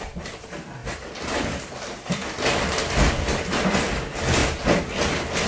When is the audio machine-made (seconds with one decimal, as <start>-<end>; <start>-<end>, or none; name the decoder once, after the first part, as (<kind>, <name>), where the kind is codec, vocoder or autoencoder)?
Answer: none